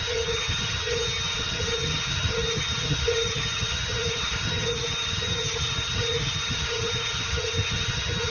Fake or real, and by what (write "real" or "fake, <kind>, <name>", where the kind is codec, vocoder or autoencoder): fake, vocoder, HiFi-GAN